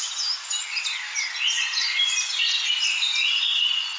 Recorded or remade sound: recorded